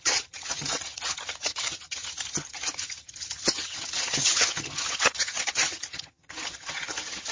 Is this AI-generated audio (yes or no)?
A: yes